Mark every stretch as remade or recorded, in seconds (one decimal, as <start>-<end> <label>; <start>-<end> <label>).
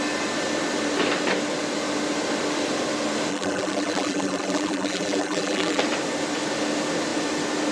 0.0-3.3 recorded; 3.3-5.8 remade; 5.8-7.7 recorded